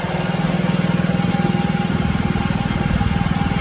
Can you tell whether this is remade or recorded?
recorded